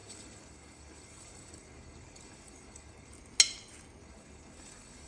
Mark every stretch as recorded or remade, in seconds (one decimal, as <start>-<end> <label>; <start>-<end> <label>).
0.0-3.1 remade; 3.1-4.0 recorded; 4.0-5.1 remade